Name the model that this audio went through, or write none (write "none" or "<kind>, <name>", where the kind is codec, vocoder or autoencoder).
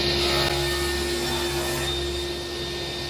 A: none